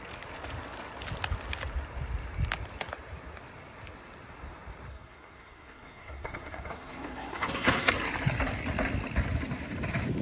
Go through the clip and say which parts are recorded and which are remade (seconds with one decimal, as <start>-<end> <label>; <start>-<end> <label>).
0.0-4.9 recorded; 4.9-7.9 remade; 7.9-10.2 recorded